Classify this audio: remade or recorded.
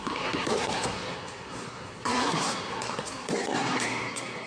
remade